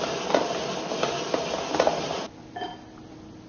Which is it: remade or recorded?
recorded